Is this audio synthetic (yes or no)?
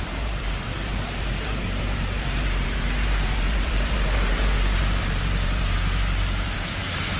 yes